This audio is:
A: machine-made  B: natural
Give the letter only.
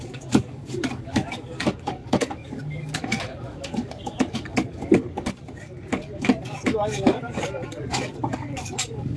A